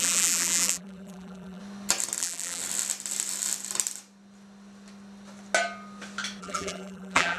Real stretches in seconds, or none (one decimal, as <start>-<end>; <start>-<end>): 1.6-2.2; 2.6-6.4